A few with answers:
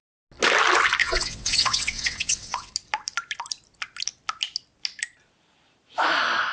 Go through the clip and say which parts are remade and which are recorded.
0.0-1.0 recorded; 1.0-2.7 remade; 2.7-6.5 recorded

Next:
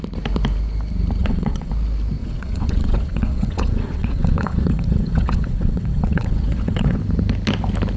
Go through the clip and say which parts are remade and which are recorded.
0.0-1.2 recorded; 1.2-1.7 remade; 1.7-2.2 recorded; 2.2-7.0 remade; 7.0-8.0 recorded

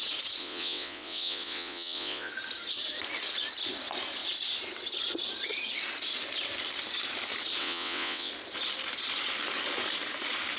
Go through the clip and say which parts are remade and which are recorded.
0.0-0.4 recorded; 0.4-2.3 remade; 2.3-7.6 recorded; 7.6-8.3 remade; 8.3-10.6 recorded

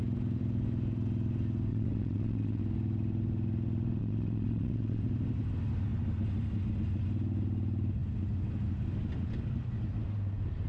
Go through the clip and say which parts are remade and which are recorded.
0.0-1.7 recorded; 1.7-2.6 remade; 2.6-4.0 recorded; 4.0-5.0 remade; 5.0-10.7 recorded

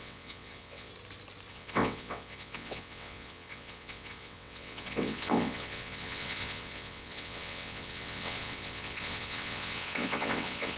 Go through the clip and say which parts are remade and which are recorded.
0.0-0.9 remade; 0.9-1.5 recorded; 1.5-10.8 remade

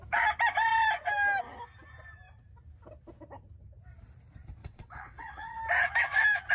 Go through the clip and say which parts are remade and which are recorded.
0.0-4.6 recorded; 4.6-5.6 remade; 5.6-6.5 recorded

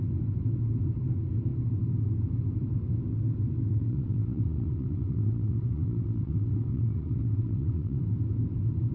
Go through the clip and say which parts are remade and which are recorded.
0.0-3.7 recorded; 3.7-8.0 remade; 8.0-8.9 recorded